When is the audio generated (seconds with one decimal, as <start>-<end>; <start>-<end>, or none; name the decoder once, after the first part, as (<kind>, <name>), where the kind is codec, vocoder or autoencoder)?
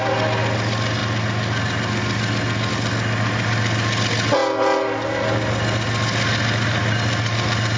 none